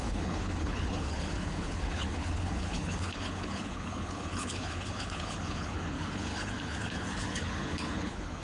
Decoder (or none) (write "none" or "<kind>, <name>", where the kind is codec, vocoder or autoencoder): codec, HILCodec